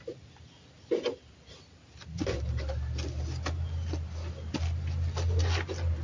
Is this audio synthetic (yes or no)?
no